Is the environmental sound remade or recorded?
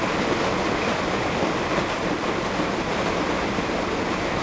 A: recorded